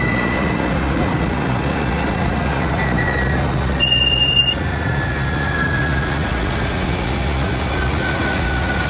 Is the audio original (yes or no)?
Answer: no